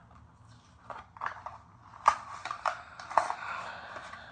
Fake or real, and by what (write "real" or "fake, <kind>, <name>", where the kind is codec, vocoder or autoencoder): real